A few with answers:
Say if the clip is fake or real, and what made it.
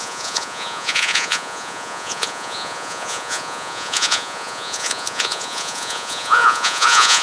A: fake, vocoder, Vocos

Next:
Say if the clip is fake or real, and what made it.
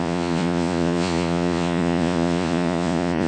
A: fake, vocoder, Vocos